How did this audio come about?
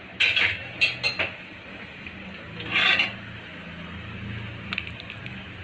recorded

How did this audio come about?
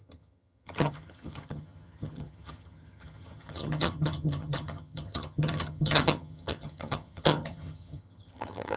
remade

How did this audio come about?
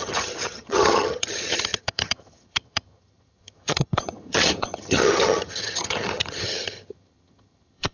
remade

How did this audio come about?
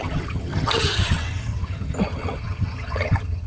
remade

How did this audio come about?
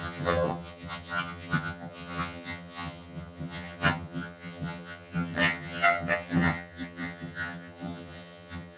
remade